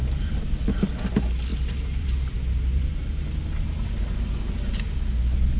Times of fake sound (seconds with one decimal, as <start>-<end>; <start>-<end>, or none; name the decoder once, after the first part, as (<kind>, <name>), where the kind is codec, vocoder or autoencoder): 1.5-3.3 (vocoder, BigVGAN v2)